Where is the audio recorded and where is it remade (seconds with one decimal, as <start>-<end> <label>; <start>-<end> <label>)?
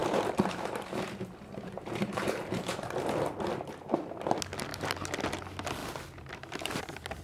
0.0-2.9 remade; 2.9-4.7 recorded; 4.7-5.2 remade; 5.2-7.2 recorded